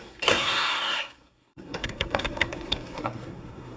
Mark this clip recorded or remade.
remade